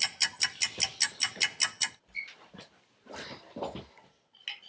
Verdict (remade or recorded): recorded